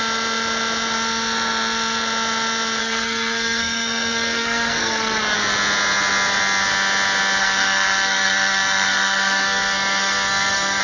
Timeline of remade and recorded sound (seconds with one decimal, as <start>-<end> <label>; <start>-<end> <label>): 0.0-2.8 recorded; 2.8-5.2 remade; 5.2-7.4 recorded; 7.4-10.8 remade